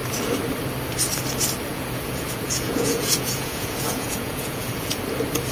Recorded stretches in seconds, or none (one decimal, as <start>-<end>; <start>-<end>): 0.0-1.7; 5.0-5.5